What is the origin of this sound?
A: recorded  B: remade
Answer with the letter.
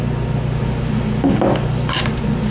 A